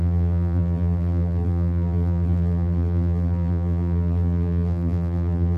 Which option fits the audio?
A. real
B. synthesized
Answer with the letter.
B